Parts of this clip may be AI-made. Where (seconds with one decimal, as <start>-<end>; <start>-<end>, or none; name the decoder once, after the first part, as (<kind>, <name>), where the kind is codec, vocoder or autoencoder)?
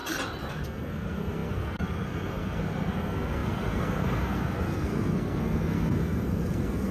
0.5-6.9 (codec, SNAC)